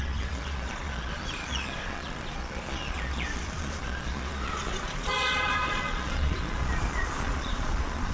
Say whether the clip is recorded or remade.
remade